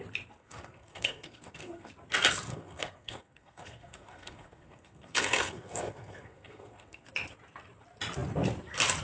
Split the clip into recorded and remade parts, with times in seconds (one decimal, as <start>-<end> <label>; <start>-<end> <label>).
0.0-0.4 recorded; 0.4-1.9 remade; 1.9-2.5 recorded; 2.5-7.1 remade; 7.1-9.0 recorded